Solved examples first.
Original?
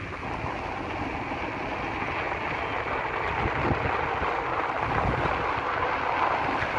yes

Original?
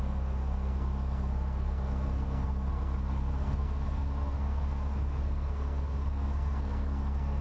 no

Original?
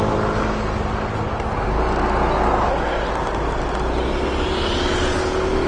yes